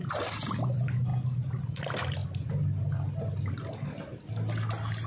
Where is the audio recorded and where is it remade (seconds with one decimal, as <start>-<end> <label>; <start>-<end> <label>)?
0.0-5.1 recorded